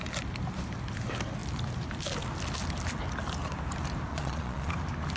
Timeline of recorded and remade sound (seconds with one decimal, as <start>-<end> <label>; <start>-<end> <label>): 0.0-4.1 recorded; 4.1-4.7 remade; 4.7-5.2 recorded